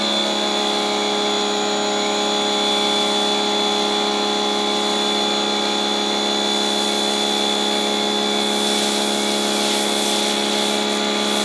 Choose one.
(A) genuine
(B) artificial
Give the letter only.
A